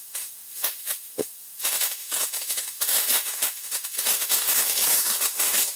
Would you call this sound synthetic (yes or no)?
yes